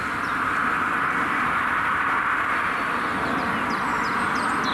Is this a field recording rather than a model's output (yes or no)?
yes